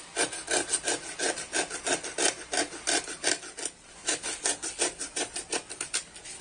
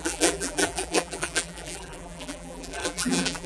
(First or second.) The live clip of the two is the first